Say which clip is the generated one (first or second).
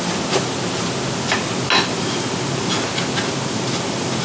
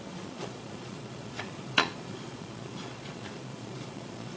second